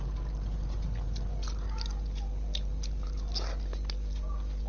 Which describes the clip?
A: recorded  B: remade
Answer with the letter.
A